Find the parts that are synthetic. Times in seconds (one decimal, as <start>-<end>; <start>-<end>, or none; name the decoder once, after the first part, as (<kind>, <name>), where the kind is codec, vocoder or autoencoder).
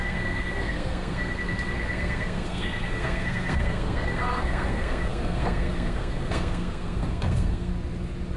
0.0-7.7 (codec, SNAC)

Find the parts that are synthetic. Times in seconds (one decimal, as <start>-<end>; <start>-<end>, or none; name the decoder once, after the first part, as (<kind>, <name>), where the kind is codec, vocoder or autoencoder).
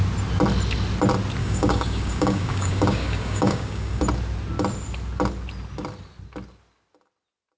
1.4-4.0 (codec, DAC)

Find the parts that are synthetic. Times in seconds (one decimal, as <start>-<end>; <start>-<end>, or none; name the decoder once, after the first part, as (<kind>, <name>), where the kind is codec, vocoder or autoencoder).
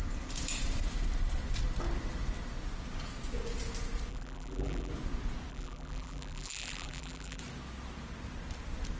4.1-4.9 (vocoder, BigVGAN v2); 5.5-7.4